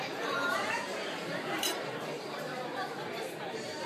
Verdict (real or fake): fake